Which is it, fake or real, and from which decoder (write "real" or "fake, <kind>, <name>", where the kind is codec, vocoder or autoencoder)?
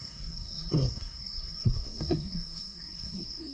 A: fake, codec, SNAC